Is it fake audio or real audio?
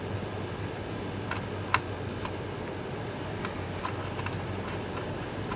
real